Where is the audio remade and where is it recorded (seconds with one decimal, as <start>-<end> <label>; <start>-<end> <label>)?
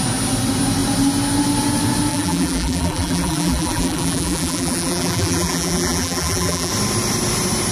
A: 0.0-2.1 recorded; 2.1-6.7 remade; 6.7-7.7 recorded